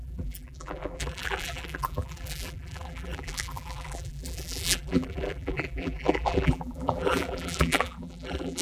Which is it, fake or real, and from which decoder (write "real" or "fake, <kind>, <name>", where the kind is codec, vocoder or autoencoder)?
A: fake, vocoder, BigVGAN v2